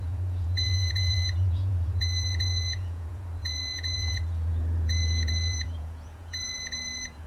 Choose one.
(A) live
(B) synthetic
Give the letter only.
B